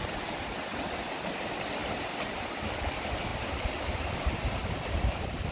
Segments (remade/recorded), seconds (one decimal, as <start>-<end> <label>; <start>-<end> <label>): 0.0-1.8 recorded; 1.8-2.5 remade; 2.5-3.3 recorded; 3.3-4.3 remade; 4.3-5.5 recorded